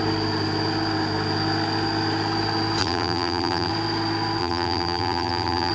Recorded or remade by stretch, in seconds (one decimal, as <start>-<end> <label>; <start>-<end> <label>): 0.0-2.8 recorded; 2.8-3.7 remade; 3.7-4.4 recorded; 4.4-5.7 remade